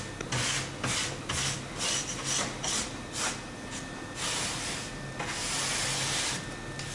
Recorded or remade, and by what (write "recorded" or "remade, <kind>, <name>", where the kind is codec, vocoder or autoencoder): recorded